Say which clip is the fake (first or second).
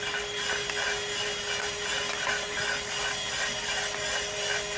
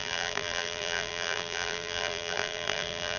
second